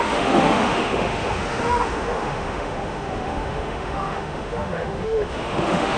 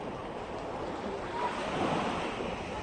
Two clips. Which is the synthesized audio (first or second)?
first